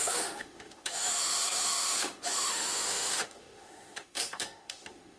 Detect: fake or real fake